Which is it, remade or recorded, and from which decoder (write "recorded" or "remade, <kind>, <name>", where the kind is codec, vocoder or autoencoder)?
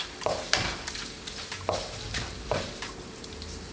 remade, vocoder, BigVGAN v2